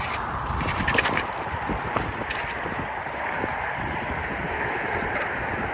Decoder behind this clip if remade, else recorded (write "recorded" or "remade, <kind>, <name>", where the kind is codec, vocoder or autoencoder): recorded